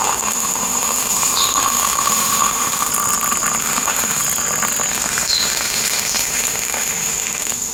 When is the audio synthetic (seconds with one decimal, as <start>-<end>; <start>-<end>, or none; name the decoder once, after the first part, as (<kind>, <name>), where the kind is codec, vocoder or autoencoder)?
0.0-2.9 (autoencoder, DAC-VAE); 3.6-4.2; 4.9-7.7